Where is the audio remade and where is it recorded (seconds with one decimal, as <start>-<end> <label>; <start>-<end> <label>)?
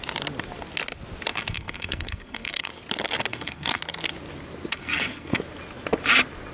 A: 0.0-1.3 recorded; 1.3-2.7 remade; 2.7-3.3 recorded; 3.3-3.8 remade; 3.8-4.7 recorded; 4.7-5.4 remade; 5.4-6.5 recorded